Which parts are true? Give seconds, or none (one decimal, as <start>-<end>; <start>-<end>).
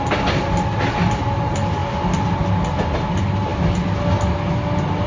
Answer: 0.0-5.1